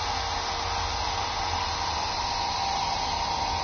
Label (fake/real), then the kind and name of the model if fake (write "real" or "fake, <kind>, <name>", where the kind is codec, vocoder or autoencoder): real